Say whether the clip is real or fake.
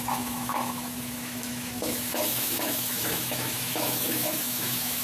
fake